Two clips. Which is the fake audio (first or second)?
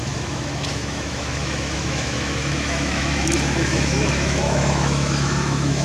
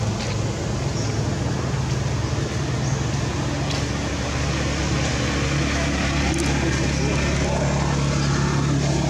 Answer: first